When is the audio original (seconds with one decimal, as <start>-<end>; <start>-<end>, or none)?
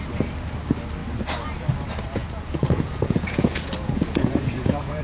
0.0-2.2